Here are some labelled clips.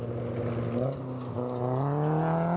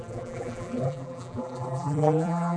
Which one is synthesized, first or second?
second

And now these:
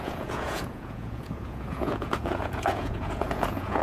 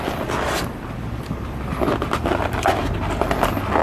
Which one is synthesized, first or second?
first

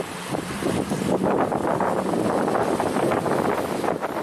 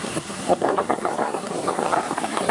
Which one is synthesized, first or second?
second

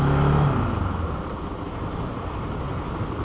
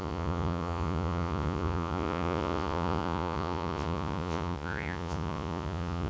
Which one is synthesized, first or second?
second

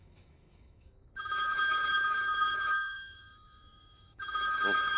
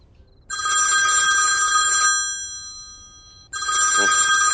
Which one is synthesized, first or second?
first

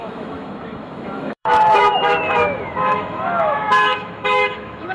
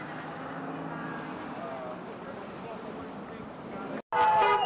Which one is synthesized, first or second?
first